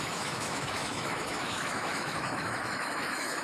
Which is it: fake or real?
fake